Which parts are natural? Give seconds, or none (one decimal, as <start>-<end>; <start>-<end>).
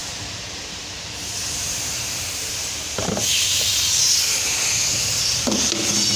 3.7-4.9; 5.6-6.2